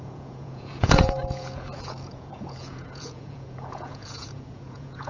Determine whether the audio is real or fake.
fake